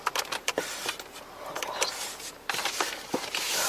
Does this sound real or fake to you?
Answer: real